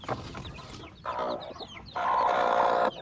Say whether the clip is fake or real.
real